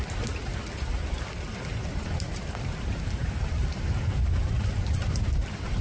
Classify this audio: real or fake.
fake